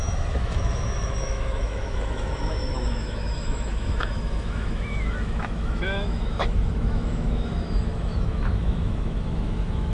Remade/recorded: remade